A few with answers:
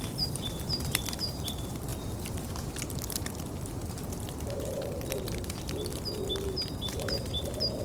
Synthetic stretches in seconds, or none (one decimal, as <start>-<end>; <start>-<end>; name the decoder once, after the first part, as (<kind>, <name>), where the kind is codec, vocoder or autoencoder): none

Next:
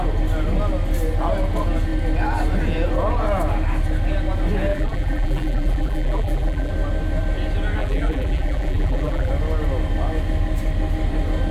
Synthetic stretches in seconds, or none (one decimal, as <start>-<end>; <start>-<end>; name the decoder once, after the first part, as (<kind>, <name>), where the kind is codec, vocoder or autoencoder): 4.7-6.7 (vocoder, BigVGAN v2); 7.8-9.3

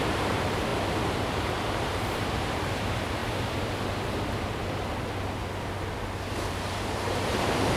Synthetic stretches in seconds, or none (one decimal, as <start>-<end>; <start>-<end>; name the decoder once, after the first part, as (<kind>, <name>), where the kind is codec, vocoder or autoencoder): 0.0-0.7 (vocoder, BigVGAN v2); 1.3-3.2; 6.5-7.8

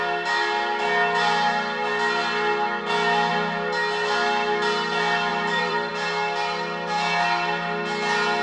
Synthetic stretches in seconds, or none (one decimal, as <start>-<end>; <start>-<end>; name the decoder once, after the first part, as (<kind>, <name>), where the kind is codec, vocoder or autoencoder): 5.3-5.9 (vocoder, BigVGAN v2)

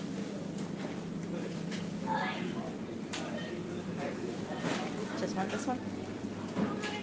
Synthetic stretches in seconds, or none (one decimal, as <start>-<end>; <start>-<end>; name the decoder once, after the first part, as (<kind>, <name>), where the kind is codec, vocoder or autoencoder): 0.0-7.0 (vocoder, BigVGAN v2)

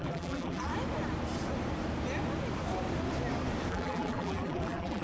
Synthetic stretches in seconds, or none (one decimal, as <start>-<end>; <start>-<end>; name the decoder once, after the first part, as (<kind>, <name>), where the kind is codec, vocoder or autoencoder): 0.0-0.7 (vocoder, BigVGAN v2); 3.7-5.0